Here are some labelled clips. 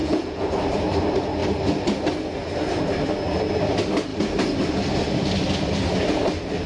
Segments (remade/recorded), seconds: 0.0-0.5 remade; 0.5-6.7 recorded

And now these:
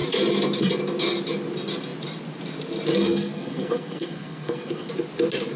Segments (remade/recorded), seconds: 0.0-2.9 recorded; 2.9-4.9 remade; 4.9-5.6 recorded

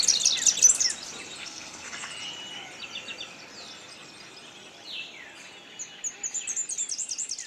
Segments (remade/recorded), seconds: 0.0-1.4 recorded; 1.4-2.1 remade; 2.1-7.5 recorded

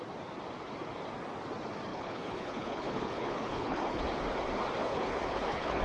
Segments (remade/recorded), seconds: 0.0-1.9 recorded; 1.9-4.0 remade; 4.0-4.8 recorded; 4.8-5.8 remade